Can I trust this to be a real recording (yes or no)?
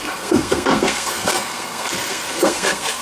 no